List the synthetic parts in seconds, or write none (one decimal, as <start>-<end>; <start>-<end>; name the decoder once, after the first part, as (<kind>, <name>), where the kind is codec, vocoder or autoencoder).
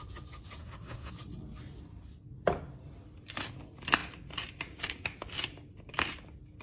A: 0.6-1.1 (codec, SNAC)